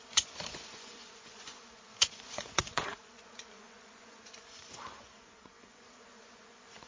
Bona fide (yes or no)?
no